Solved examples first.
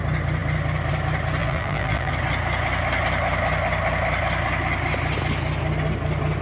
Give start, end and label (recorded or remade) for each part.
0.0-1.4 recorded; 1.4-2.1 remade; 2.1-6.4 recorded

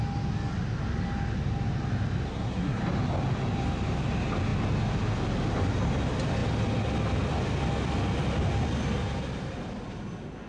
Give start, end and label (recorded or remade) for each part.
0.0-2.3 recorded; 2.3-2.8 remade; 2.8-10.5 recorded

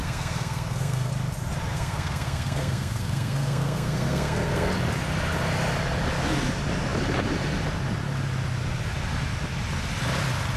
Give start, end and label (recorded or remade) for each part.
0.0-1.1 remade; 1.1-1.7 recorded; 1.7-4.7 remade; 4.7-10.6 recorded